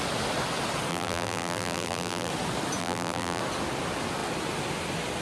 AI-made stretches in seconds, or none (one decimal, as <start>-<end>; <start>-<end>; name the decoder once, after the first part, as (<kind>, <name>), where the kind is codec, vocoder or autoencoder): 0.9-2.3 (vocoder, BigVGAN v2); 2.8-3.4

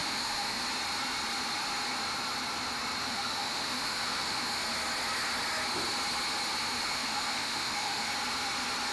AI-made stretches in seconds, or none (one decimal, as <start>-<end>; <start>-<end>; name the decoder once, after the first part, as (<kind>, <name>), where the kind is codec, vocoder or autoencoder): 0.0-0.6 (autoencoder, DAC-VAE); 3.0-4.6; 6.8-8.1

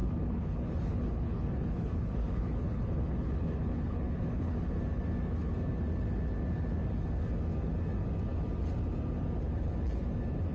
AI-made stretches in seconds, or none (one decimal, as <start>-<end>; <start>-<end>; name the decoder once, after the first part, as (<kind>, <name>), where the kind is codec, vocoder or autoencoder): 0.0-4.7 (codec, HILCodec)